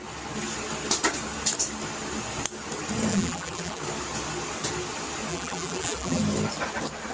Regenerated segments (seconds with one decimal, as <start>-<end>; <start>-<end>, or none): 3.1-3.8; 5.3-6.2